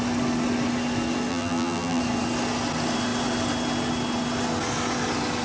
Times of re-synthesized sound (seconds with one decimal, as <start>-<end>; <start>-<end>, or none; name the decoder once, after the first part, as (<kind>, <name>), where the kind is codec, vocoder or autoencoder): 1.3-2.0 (vocoder, BigVGAN v2)